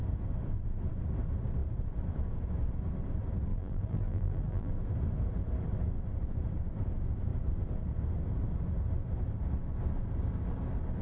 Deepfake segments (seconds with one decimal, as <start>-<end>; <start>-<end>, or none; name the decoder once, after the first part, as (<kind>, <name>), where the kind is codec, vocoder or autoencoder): 3.5-4.7 (vocoder, BigVGAN v2)